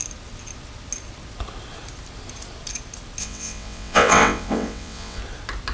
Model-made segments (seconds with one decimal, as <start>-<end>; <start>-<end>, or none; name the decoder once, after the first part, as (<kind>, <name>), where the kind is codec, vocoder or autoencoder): 3.2-5.2 (vocoder, WaveNeXt)